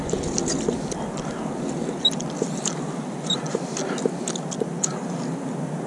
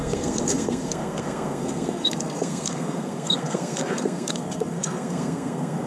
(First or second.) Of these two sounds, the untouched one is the first